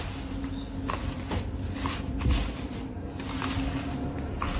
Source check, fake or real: real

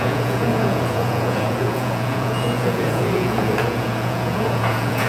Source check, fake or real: fake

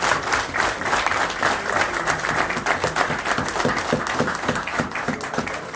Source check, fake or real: real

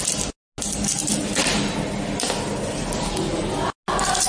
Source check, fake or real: real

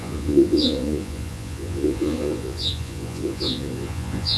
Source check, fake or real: fake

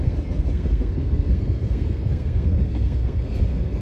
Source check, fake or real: fake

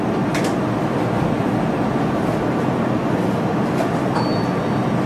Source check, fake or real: real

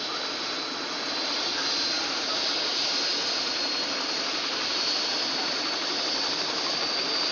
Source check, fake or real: real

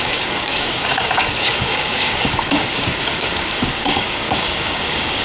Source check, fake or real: fake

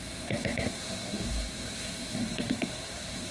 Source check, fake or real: fake